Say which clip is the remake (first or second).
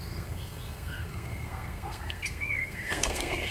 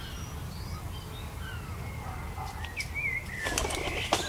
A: first